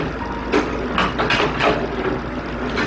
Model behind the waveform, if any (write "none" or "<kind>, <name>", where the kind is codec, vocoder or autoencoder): none